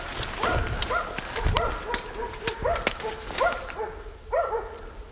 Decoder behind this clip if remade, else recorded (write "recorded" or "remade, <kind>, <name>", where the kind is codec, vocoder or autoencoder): recorded